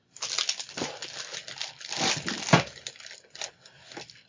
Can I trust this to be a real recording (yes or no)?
yes